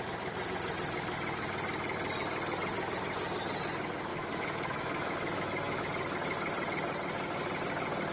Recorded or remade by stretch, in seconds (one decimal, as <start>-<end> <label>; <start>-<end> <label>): 0.0-4.1 recorded; 4.1-5.8 remade; 5.8-8.1 recorded